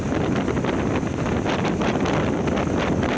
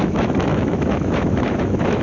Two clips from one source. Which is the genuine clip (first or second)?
first